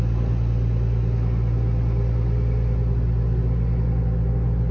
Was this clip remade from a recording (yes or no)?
no